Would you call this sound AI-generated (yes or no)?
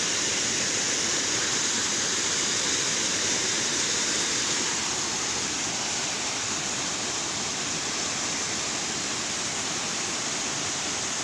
no